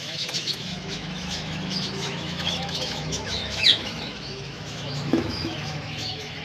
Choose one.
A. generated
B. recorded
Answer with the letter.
A